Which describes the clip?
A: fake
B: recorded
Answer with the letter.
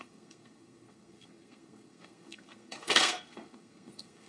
A